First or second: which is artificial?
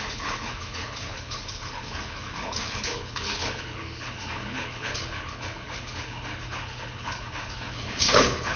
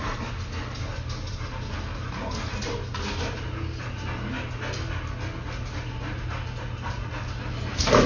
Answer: first